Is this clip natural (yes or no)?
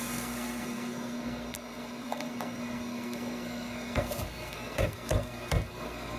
no